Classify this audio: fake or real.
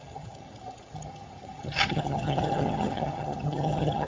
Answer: fake